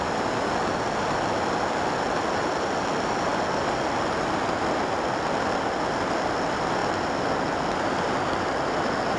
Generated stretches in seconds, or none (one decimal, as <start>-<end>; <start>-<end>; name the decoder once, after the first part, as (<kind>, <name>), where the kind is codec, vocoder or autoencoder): none